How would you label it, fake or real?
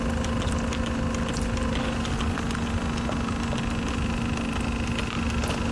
real